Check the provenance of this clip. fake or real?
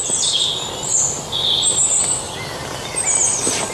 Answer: real